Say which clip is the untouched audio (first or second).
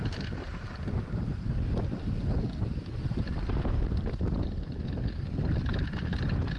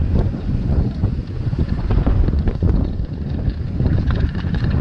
first